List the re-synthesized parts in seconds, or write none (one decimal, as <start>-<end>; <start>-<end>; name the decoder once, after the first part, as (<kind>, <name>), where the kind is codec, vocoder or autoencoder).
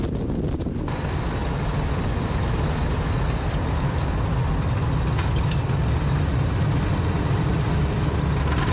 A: none